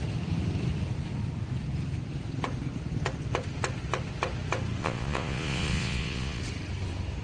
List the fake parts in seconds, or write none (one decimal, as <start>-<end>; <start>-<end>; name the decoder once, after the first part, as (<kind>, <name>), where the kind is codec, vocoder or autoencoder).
4.8-6.4 (vocoder, Vocos)